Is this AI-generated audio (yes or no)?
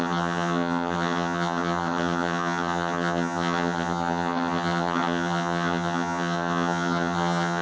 yes